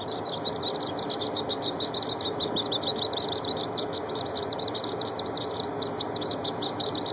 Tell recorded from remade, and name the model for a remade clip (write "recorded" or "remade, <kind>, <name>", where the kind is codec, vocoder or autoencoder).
recorded